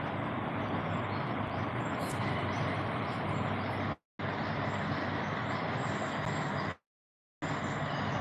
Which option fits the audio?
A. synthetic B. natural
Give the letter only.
B